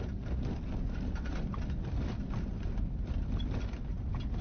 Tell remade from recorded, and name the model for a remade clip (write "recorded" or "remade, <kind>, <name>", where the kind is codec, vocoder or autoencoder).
recorded